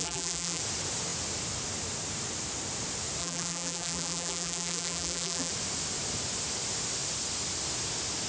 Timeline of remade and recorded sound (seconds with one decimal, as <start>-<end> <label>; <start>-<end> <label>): 0.0-0.6 remade; 0.6-3.2 recorded; 3.2-5.5 remade; 5.5-8.3 recorded